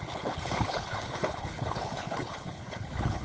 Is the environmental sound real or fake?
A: fake